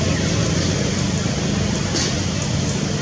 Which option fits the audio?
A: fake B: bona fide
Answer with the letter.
B